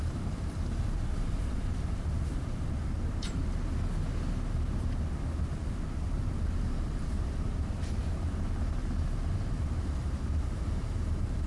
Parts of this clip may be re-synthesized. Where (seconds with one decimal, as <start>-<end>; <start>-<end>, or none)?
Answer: 0.0-3.4; 5.6-8.8; 9.5-11.5